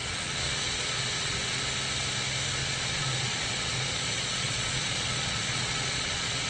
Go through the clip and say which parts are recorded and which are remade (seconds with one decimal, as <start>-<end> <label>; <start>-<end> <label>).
0.0-1.6 remade; 1.6-2.6 recorded; 2.6-6.5 remade